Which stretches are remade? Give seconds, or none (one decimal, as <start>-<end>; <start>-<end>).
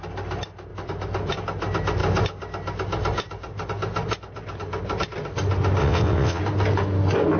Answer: 5.8-6.4